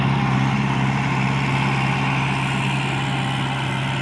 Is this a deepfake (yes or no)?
no